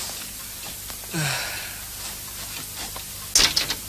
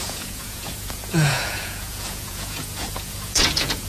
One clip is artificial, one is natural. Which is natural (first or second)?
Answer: first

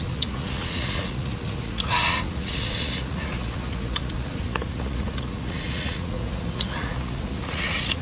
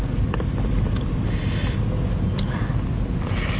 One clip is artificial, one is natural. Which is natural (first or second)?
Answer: second